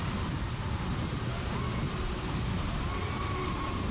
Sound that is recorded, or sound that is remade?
recorded